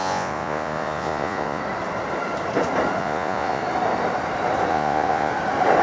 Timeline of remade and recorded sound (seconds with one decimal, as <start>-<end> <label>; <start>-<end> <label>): 0.0-1.6 remade; 1.6-3.0 recorded; 3.0-3.6 remade; 3.6-4.7 recorded; 4.7-5.3 remade; 5.3-5.8 recorded